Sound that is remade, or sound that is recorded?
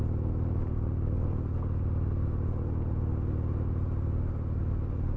recorded